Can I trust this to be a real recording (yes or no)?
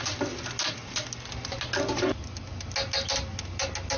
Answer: yes